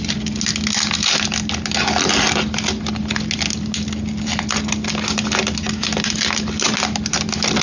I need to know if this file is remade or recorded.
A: recorded